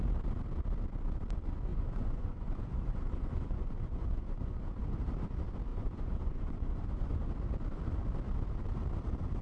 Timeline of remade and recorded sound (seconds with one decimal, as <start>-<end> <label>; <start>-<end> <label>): 0.0-1.7 recorded; 1.7-4.8 remade; 4.8-5.7 recorded; 5.7-7.3 remade; 7.3-9.4 recorded